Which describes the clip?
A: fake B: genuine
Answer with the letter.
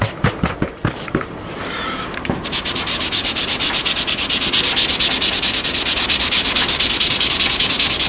B